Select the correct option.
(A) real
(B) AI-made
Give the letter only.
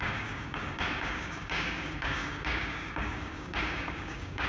B